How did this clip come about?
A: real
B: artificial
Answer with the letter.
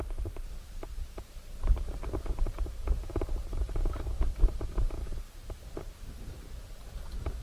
B